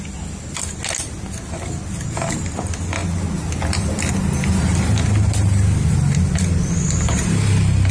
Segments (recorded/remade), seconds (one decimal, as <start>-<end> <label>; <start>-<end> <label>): 0.0-7.9 recorded